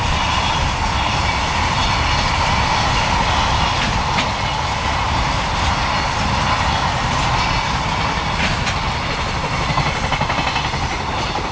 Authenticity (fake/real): real